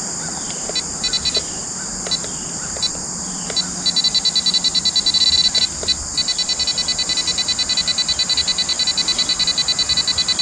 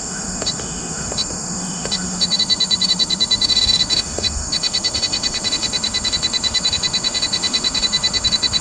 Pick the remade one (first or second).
second